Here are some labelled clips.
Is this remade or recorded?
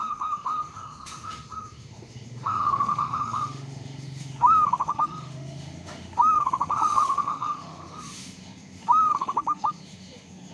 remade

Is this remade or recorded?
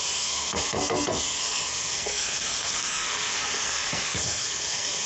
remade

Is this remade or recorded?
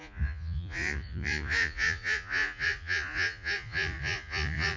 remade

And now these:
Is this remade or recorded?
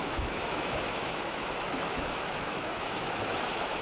remade